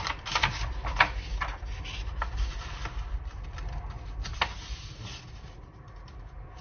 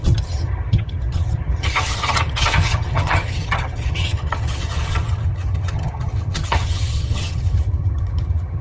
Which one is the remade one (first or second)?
second